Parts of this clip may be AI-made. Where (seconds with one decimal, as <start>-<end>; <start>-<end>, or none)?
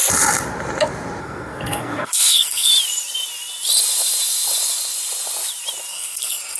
1.2-2.7; 5.9-6.6